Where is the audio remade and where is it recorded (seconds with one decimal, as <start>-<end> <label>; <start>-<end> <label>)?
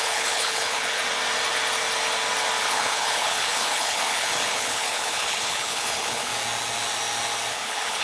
0.0-1.0 remade; 1.0-2.6 recorded; 2.6-6.3 remade; 6.3-7.5 recorded; 7.5-8.0 remade